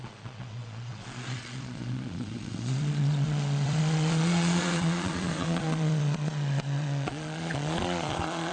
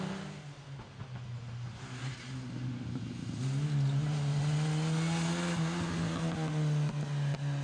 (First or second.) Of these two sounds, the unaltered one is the second